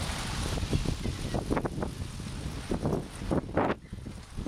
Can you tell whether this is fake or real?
real